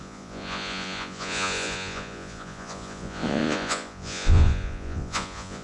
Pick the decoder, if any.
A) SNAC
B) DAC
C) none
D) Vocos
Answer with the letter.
D